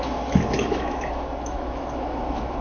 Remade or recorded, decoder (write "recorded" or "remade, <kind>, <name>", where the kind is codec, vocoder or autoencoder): remade, autoencoder, DAC-VAE